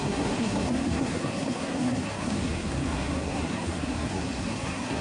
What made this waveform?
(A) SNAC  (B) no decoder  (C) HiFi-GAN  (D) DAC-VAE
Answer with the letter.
A